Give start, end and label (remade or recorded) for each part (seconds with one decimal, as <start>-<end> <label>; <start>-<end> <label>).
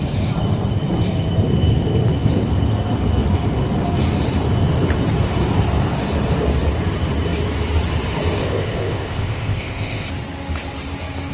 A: 0.0-8.4 recorded; 8.4-10.1 remade; 10.1-11.3 recorded